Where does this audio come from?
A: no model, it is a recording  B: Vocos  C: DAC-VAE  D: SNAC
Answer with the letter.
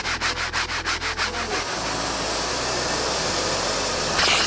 A